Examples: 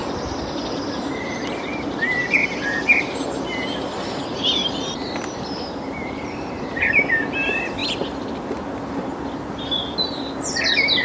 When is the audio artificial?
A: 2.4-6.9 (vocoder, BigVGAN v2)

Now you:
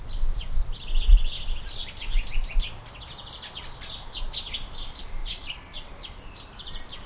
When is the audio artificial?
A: none

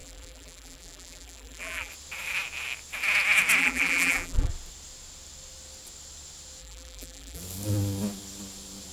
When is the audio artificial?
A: 0.0-1.9 (vocoder, BigVGAN v2); 3.6-4.5; 6.6-7.4

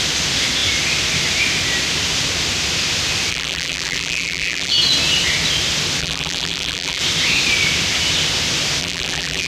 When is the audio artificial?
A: 3.3-4.7 (vocoder, BigVGAN v2); 6.0-7.0; 8.8-9.5

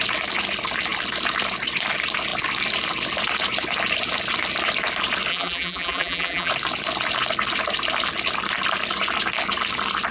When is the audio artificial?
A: 5.3-6.5 (vocoder, BigVGAN v2)

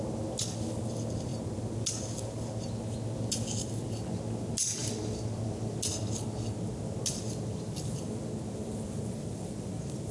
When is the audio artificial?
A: none